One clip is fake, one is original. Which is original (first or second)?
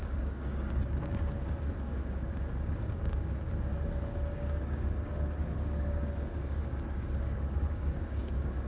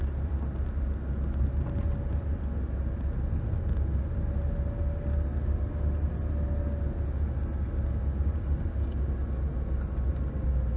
second